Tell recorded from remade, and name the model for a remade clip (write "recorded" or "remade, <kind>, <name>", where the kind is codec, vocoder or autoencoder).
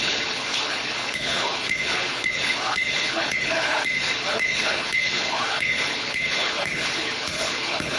remade, codec, HILCodec